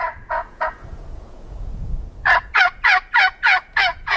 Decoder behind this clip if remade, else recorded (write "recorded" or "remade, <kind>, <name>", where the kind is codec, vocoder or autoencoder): remade, vocoder, Vocos